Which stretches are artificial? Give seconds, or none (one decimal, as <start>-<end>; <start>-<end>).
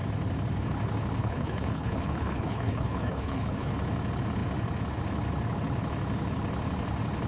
1.2-3.7